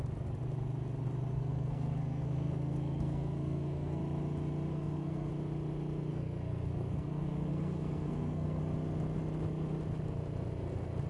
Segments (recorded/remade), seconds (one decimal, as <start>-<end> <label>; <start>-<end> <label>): 0.0-1.3 recorded; 1.3-4.0 remade; 4.0-4.7 recorded; 4.7-5.3 remade; 5.3-6.1 recorded; 6.1-8.6 remade; 8.6-11.1 recorded

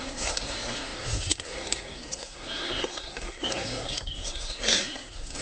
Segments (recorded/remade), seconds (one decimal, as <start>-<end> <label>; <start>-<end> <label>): 0.0-5.4 remade

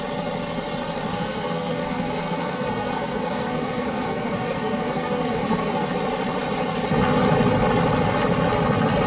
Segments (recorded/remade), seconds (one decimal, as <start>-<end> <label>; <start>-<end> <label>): 0.0-1.1 recorded; 1.1-5.9 remade; 5.9-9.1 recorded

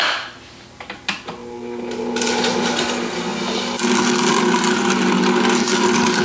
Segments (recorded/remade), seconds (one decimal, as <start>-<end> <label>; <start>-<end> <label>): 0.0-6.2 recorded

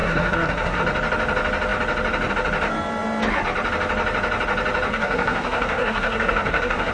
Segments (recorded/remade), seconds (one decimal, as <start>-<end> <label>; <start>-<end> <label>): 0.0-0.8 remade; 0.8-4.9 recorded; 4.9-6.9 remade

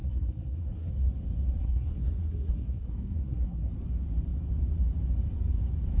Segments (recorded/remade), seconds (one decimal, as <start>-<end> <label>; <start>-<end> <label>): 0.0-0.9 remade; 0.9-1.6 recorded; 1.6-3.7 remade; 3.7-6.0 recorded

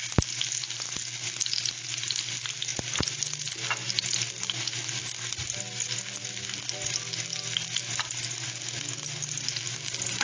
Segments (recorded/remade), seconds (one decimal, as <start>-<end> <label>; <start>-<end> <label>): 0.0-10.2 recorded